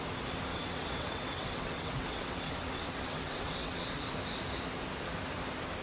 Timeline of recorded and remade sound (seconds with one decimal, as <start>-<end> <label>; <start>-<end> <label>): 0.0-0.5 recorded; 0.5-4.0 remade; 4.0-5.8 recorded